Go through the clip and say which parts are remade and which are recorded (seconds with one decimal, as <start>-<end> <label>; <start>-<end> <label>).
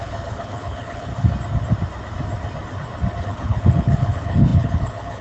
0.0-1.1 remade; 1.1-3.2 recorded; 3.2-5.2 remade